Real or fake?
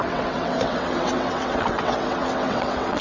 fake